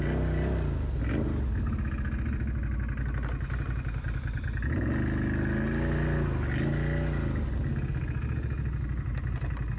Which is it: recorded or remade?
recorded